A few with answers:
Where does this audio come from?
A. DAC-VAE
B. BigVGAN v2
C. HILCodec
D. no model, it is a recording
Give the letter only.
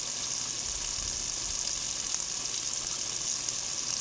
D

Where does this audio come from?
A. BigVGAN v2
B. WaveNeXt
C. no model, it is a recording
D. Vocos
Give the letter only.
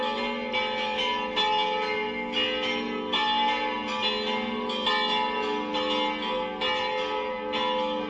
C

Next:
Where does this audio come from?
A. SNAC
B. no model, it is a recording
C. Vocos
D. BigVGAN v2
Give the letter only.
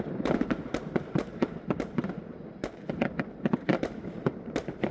D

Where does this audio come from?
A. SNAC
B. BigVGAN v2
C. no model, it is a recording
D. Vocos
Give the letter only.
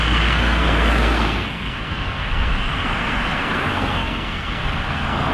A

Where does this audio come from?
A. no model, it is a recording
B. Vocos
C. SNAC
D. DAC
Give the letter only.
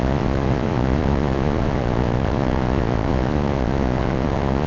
B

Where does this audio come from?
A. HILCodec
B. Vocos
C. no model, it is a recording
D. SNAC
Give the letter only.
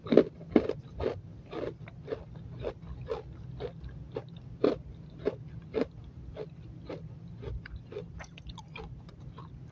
C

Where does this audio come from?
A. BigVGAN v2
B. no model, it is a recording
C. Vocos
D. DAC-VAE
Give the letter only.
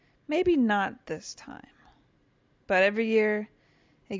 B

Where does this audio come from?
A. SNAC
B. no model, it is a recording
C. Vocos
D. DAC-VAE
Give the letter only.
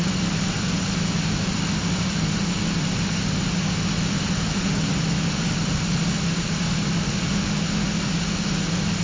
B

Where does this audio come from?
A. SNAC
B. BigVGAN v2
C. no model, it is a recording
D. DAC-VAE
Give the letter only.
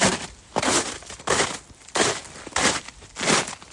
C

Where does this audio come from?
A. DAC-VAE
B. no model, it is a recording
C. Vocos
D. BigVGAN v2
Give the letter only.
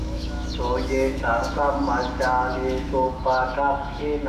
A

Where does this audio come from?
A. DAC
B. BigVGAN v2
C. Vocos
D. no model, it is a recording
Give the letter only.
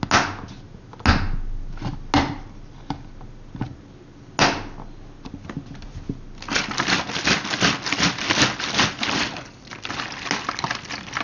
D